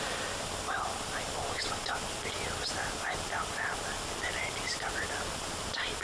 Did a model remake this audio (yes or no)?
no